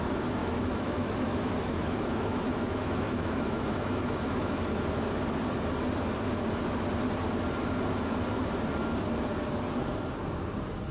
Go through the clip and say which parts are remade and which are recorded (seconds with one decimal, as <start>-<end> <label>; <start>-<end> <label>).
0.0-0.4 recorded; 0.4-4.6 remade; 4.6-10.9 recorded